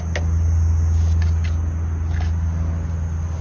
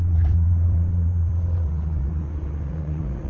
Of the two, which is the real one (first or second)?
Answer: first